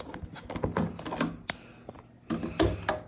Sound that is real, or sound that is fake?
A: real